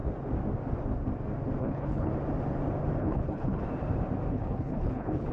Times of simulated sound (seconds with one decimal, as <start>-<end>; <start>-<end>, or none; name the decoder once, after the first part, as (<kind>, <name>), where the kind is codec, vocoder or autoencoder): 1.6-2.1 (codec, HILCodec); 3.0-3.6; 4.3-5.3